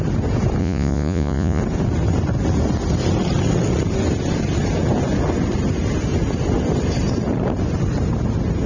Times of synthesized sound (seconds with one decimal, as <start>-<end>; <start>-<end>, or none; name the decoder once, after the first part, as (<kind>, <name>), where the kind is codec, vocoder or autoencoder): 0.6-1.6 (vocoder, Vocos)